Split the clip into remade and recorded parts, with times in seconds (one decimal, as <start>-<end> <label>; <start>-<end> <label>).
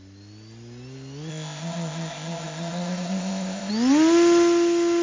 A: 0.0-1.3 recorded; 1.3-3.7 remade; 3.7-5.0 recorded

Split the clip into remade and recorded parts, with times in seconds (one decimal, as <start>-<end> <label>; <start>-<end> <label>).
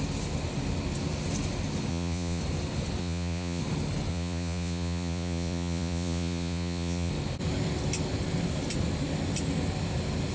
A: 0.0-1.9 recorded; 1.9-2.4 remade; 2.4-3.0 recorded; 3.0-3.6 remade; 3.6-4.1 recorded; 4.1-7.1 remade; 7.1-10.3 recorded